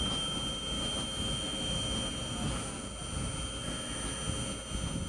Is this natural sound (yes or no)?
yes